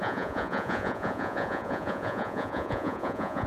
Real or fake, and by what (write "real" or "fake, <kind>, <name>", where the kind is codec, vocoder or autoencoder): fake, vocoder, Vocos